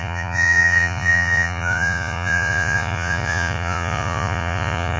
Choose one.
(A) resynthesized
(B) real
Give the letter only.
A